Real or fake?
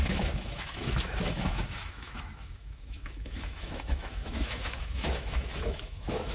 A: fake